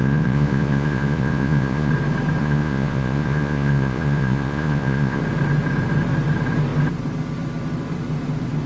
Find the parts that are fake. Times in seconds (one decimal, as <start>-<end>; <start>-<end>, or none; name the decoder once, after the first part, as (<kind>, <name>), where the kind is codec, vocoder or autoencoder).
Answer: 0.0-1.9 (vocoder, Vocos); 2.4-5.2